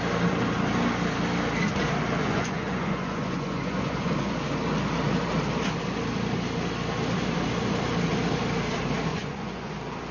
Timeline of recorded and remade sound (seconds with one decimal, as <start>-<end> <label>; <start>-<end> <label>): 0.0-2.2 recorded; 2.2-4.1 remade; 4.1-9.1 recorded; 9.1-9.7 remade; 9.7-10.1 recorded

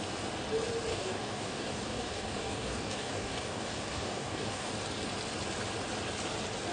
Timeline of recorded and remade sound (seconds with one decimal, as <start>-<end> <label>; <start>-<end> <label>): 0.0-0.9 recorded; 0.9-4.7 remade; 4.7-6.7 recorded

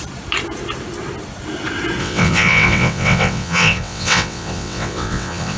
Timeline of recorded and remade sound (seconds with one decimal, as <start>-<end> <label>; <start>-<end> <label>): 0.0-2.0 recorded; 2.0-5.6 remade

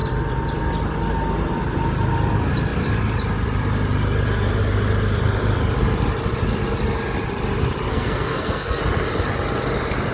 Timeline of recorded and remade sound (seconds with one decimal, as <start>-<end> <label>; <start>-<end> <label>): 0.0-7.9 recorded; 7.9-8.8 remade; 8.8-10.1 recorded